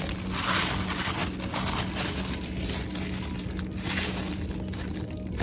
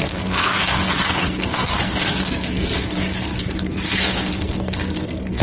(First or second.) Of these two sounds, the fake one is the second